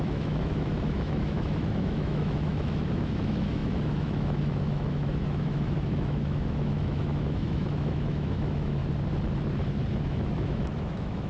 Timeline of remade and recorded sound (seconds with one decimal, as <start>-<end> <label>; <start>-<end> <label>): 0.0-8.8 remade; 8.8-10.0 recorded; 10.0-11.3 remade